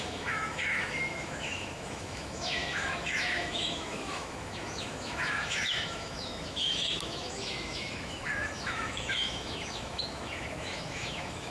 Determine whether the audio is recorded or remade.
remade